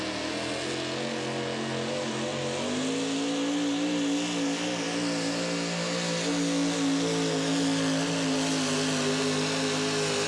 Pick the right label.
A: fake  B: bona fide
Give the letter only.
B